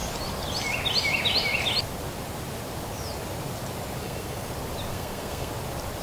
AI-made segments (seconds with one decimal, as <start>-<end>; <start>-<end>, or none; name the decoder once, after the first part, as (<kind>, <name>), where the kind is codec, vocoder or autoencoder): 4.0-4.5 (codec, SNAC); 4.9-5.5